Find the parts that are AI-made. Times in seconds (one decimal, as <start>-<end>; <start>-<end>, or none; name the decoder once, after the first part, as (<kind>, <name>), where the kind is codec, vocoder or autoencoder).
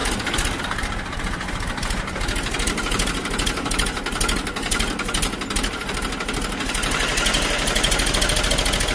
none